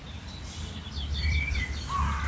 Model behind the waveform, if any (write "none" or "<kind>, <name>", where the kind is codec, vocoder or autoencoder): vocoder, BigVGAN v2